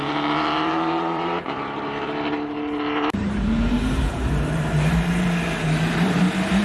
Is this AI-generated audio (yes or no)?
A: yes